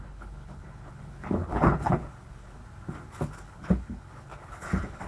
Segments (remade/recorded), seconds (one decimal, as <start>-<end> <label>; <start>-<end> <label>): 0.0-2.6 remade; 2.6-3.1 recorded; 3.1-5.1 remade